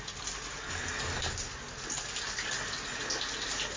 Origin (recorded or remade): recorded